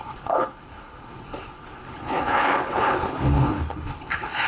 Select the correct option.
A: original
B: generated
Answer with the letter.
B